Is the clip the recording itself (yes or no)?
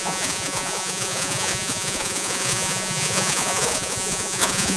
no